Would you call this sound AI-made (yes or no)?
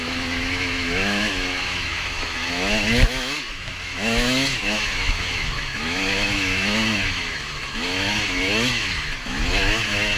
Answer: yes